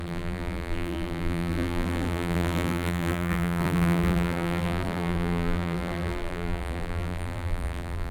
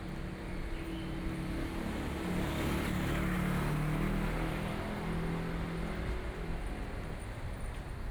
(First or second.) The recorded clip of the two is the second